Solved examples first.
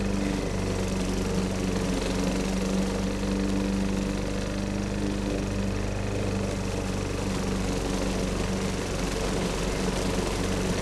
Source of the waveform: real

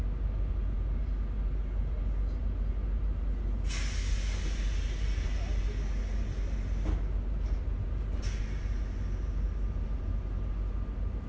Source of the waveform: real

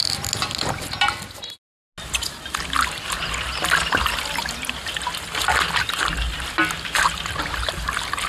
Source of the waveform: real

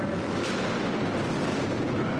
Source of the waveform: real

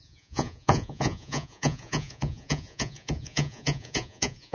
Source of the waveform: fake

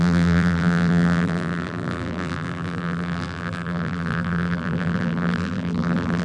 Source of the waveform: fake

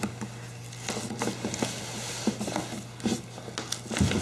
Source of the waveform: real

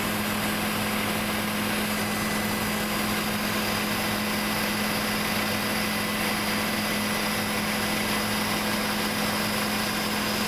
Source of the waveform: real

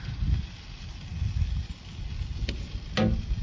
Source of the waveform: real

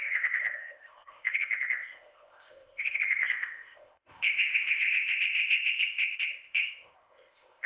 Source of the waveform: fake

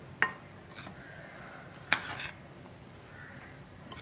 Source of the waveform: real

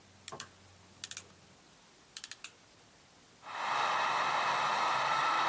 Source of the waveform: real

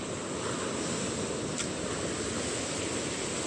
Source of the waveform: real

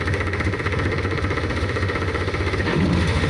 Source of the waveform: fake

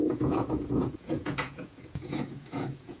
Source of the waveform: fake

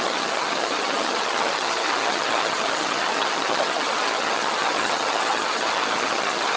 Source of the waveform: fake